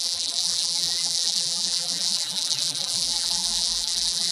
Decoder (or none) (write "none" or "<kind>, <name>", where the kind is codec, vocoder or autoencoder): vocoder, BigVGAN v2